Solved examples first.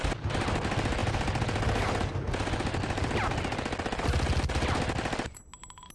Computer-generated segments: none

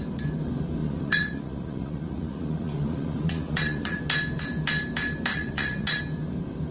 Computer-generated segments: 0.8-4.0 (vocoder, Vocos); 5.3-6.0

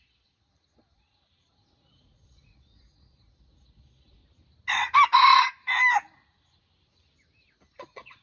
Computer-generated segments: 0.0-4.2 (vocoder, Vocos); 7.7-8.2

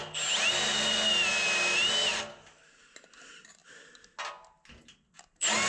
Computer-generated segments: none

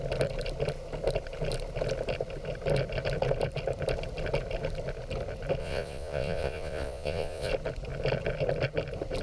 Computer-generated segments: 5.6-7.5 (vocoder, Vocos)